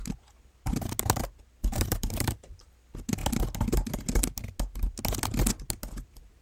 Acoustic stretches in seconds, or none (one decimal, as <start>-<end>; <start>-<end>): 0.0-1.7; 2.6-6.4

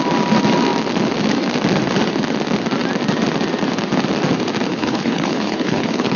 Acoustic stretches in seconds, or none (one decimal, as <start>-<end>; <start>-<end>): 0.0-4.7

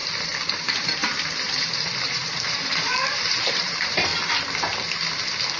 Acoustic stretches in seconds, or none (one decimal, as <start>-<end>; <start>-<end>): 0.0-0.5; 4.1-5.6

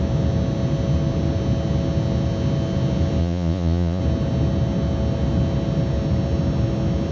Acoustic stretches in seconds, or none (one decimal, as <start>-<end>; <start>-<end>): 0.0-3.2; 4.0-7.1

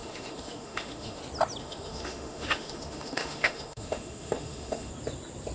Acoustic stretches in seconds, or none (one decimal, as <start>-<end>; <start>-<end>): 1.2-1.6; 4.9-5.5

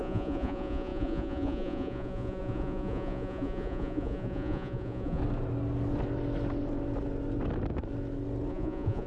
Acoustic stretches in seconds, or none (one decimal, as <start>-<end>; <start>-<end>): 5.2-8.5